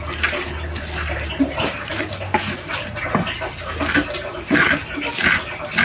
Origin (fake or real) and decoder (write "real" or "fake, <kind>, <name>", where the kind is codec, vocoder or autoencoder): real